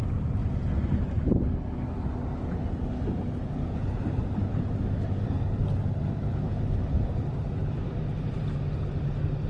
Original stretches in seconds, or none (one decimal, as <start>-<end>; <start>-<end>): 0.0-4.5; 8.5-9.5